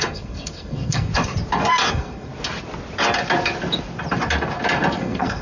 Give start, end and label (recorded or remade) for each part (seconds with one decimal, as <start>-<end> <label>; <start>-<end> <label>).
0.0-1.1 remade; 1.1-1.9 recorded; 1.9-2.3 remade; 2.3-5.0 recorded; 5.0-5.4 remade